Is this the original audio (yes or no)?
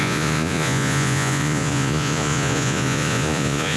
no